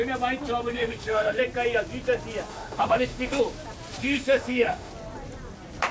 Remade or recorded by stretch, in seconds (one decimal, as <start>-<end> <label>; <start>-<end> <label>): 0.0-0.7 recorded; 0.7-1.4 remade; 1.4-2.5 recorded; 2.5-3.4 remade; 3.4-4.0 recorded; 4.0-4.9 remade; 4.9-5.9 recorded